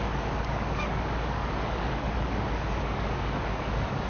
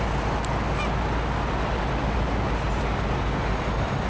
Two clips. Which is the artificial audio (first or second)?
first